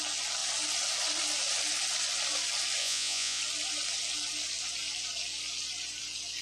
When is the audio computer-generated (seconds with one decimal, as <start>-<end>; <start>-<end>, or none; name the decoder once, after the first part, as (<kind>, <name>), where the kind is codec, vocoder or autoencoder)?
2.8-3.4 (vocoder, Vocos)